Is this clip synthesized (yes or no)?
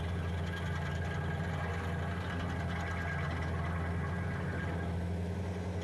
no